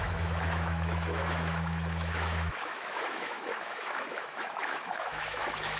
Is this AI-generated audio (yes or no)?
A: yes